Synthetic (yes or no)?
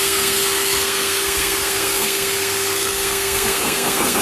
yes